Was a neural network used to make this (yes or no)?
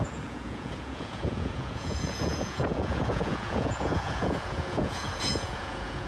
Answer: yes